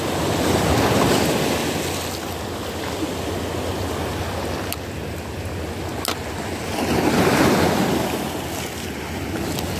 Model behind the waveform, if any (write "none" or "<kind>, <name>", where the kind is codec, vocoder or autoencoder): none